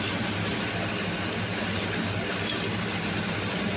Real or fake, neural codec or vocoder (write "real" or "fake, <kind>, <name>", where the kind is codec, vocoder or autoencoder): fake, vocoder, BigVGAN v2